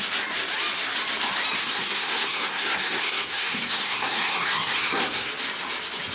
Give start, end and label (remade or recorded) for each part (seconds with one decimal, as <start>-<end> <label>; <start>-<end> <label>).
0.0-1.6 recorded; 1.6-5.3 remade; 5.3-6.1 recorded